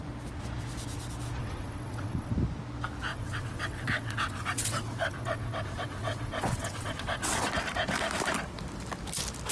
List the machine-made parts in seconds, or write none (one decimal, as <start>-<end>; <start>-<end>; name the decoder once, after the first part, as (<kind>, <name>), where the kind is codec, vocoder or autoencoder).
1.4-2.3 (vocoder, WaveNeXt); 3.1-7.5